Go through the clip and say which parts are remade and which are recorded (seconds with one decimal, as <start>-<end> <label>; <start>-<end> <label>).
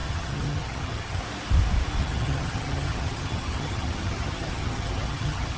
0.0-1.2 remade; 1.2-2.0 recorded; 2.0-5.6 remade